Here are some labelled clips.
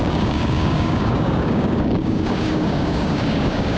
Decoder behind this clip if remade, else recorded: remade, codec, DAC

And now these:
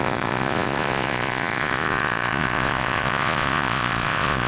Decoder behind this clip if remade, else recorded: remade, vocoder, Vocos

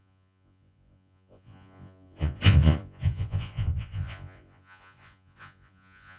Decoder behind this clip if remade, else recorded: remade, vocoder, Vocos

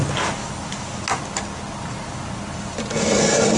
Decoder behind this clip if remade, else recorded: recorded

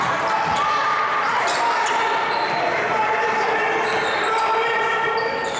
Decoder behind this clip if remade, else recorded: remade, vocoder, BigVGAN v2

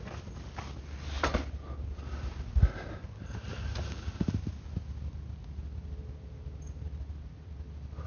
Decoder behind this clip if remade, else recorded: recorded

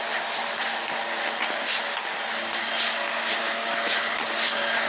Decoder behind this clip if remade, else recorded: recorded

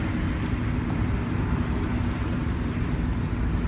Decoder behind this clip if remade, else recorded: recorded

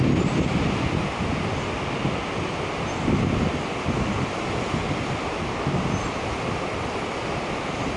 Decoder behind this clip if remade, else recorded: recorded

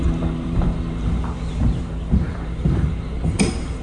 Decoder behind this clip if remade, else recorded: remade, vocoder, BigVGAN v2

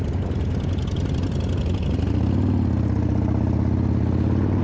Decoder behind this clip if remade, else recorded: recorded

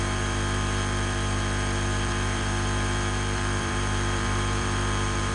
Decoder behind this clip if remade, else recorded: remade, vocoder, BigVGAN v2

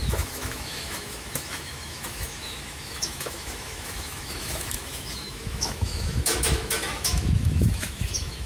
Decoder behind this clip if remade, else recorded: remade, autoencoder, DAC-VAE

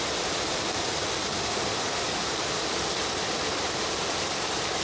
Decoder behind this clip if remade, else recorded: recorded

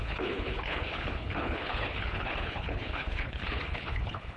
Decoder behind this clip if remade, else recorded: remade, codec, HILCodec